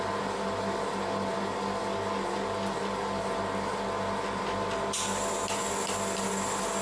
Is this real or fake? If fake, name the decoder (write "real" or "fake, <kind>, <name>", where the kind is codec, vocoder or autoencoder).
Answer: real